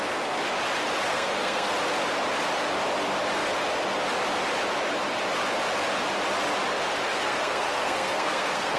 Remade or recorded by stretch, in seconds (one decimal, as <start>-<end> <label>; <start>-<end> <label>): 0.0-1.1 recorded; 1.1-1.7 remade; 1.7-7.1 recorded; 7.1-8.8 remade